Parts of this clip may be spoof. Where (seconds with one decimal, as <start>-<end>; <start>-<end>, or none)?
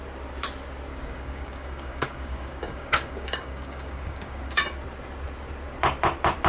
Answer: 0.9-4.6